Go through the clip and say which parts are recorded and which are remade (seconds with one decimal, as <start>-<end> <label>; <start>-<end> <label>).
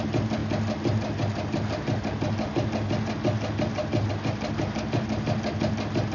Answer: 0.0-6.1 recorded